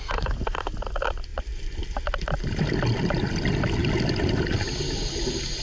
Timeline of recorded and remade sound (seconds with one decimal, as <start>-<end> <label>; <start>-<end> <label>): 0.0-5.6 recorded